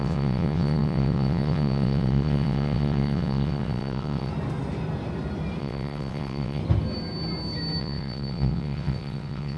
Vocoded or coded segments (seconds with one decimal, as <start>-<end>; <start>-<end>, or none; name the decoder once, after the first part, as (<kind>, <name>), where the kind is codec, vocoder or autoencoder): 0.0-4.3 (vocoder, WaveNeXt); 5.6-6.6; 7.8-9.6